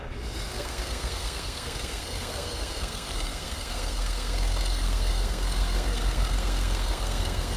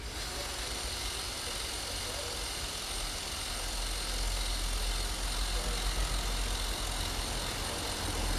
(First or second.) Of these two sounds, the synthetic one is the first